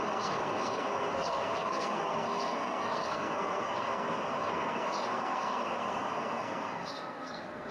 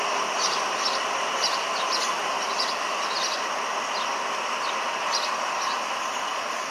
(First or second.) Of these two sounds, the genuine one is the second